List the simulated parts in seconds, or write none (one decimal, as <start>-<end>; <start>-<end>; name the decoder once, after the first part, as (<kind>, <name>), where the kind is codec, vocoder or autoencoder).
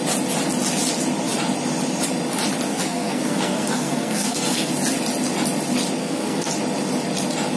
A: 2.7-4.7 (codec, SNAC); 6.0-6.5